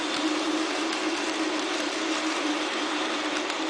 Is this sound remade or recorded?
remade